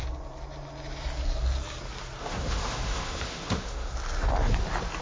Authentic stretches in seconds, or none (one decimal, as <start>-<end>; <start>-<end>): 0.0-2.2; 3.9-5.0